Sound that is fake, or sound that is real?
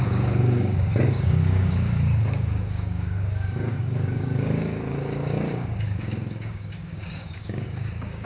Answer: fake